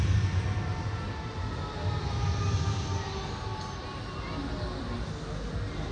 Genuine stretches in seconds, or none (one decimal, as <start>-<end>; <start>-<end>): 0.0-5.9